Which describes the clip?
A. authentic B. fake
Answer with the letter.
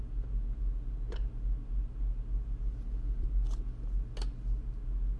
A